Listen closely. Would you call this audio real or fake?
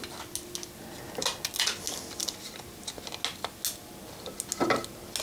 real